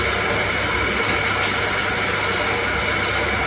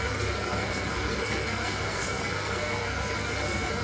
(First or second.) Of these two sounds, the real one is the first